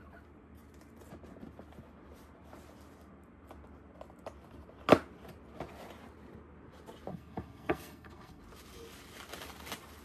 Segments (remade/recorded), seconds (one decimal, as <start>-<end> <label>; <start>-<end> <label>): 0.0-7.1 recorded; 7.1-8.4 remade; 8.4-10.0 recorded